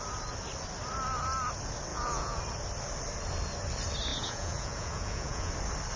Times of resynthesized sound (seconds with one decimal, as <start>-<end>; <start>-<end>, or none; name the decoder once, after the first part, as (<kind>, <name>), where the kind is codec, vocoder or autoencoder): 1.9-2.4 (vocoder, Vocos); 4.1-5.5